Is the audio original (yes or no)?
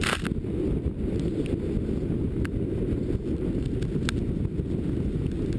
yes